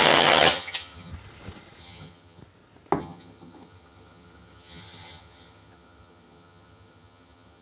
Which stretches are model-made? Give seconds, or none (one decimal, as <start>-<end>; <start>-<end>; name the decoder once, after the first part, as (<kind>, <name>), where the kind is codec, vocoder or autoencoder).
0.0-1.1 (vocoder, HiFi-GAN); 1.8-2.4; 3.0-7.6